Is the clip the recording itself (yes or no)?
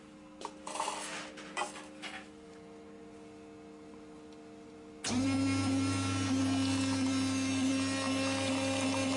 yes